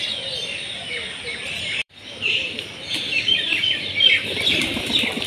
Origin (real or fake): fake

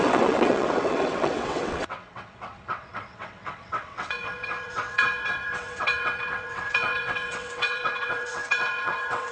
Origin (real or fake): fake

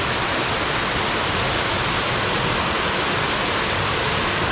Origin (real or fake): real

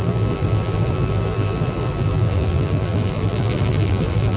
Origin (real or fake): fake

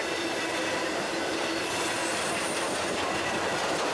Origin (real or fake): real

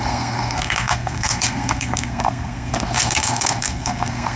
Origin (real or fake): fake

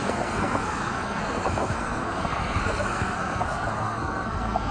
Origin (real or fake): fake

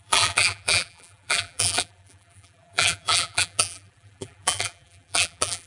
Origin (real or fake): fake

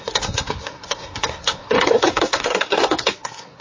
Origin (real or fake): fake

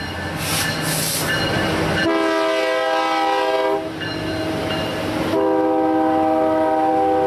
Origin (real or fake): real